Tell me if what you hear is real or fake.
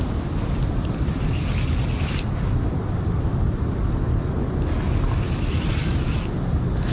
real